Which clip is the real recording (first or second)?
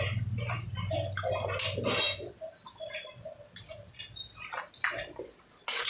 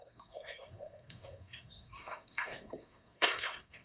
first